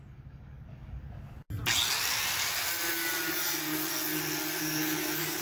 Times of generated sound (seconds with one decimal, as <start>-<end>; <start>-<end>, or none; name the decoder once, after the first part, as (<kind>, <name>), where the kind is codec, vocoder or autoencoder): 0.0-1.4 (codec, DAC); 4.6-5.4